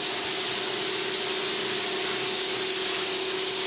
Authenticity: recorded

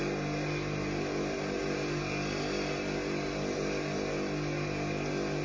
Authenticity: recorded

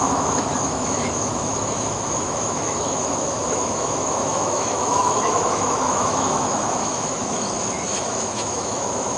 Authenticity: remade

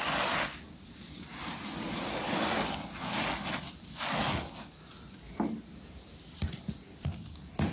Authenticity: recorded